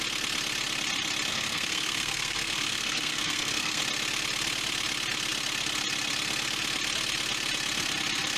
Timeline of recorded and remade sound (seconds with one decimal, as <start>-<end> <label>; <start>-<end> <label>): 0.0-1.3 recorded; 1.3-3.8 remade; 3.8-8.4 recorded